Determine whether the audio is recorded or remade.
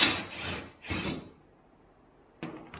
recorded